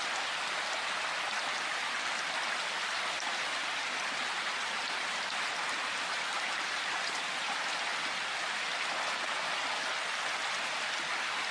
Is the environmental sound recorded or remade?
recorded